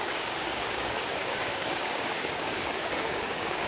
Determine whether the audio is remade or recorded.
remade